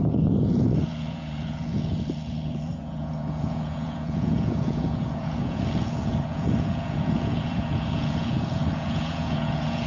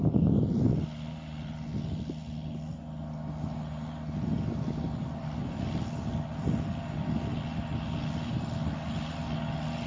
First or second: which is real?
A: second